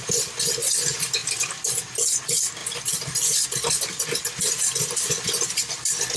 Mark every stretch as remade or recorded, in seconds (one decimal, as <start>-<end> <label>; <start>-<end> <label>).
0.0-1.2 recorded; 1.2-1.8 remade; 1.8-6.2 recorded